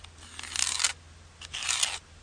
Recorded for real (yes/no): yes